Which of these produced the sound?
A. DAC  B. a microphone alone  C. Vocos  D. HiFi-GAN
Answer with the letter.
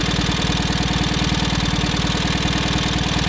B